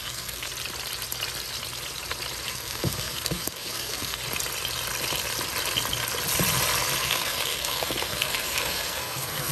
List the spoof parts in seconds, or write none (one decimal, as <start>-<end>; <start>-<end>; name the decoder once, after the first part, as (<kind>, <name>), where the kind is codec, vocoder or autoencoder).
0.0-0.5 (codec, SNAC); 2.5-4.2; 7.0-9.5